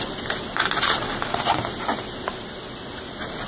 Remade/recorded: recorded